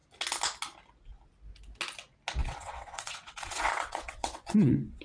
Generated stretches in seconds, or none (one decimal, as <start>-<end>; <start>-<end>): 2.4-5.0